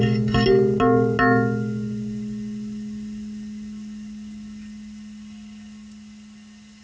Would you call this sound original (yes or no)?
yes